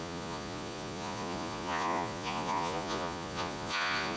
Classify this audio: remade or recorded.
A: remade